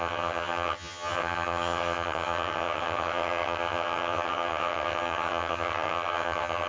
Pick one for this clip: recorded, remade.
remade